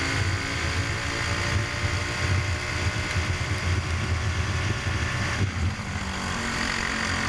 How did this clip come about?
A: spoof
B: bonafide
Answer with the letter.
B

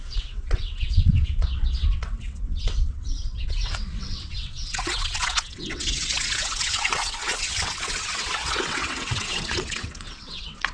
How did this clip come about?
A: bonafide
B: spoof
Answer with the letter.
B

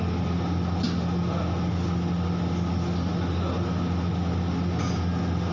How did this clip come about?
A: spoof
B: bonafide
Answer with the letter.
B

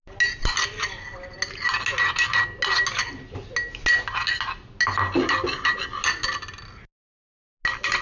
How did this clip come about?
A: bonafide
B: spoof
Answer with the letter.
A